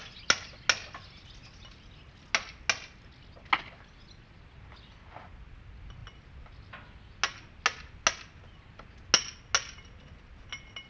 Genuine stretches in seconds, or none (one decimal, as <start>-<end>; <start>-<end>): 0.0-10.9